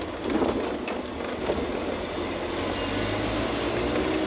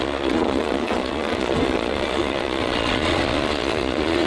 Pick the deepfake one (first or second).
second